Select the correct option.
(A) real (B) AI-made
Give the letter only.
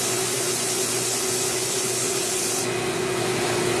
B